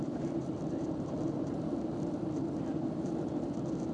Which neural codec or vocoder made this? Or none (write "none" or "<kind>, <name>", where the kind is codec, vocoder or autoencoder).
vocoder, BigVGAN v2